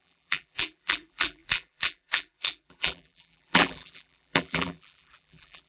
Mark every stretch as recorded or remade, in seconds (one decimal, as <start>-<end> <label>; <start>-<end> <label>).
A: 0.0-5.7 remade